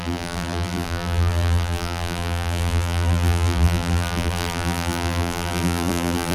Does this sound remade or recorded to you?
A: remade